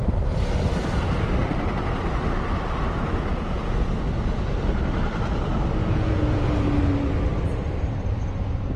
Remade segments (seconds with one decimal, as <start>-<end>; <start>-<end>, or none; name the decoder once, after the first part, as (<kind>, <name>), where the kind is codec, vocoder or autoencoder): 5.8-6.5 (vocoder, Vocos)